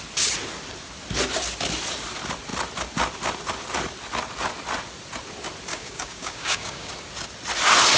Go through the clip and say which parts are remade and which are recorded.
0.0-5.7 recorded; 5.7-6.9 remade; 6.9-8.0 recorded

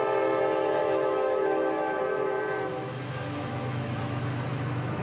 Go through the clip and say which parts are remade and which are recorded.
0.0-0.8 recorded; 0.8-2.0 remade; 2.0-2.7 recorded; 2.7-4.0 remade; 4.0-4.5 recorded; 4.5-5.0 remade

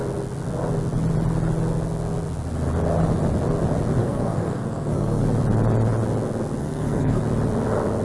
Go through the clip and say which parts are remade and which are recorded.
0.0-4.0 recorded; 4.0-5.2 remade; 5.2-6.6 recorded; 6.6-7.2 remade; 7.2-8.0 recorded

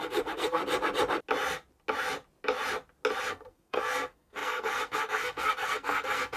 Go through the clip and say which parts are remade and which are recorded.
0.0-0.6 remade; 0.6-3.3 recorded; 3.3-6.4 remade

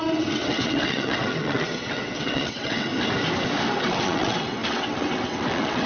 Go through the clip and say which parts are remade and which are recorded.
0.0-2.9 remade; 2.9-3.8 recorded; 3.8-5.9 remade